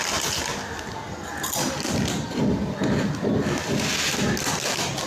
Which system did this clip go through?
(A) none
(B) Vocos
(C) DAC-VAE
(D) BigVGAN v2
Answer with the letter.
A